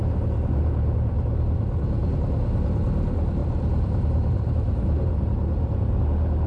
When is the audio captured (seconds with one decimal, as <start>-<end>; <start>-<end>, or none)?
0.0-3.4; 6.0-6.5